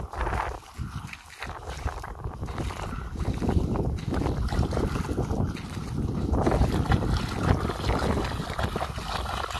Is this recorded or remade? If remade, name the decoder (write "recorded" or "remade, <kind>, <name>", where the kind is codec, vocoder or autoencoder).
recorded